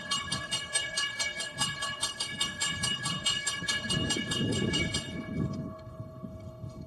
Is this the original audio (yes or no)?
no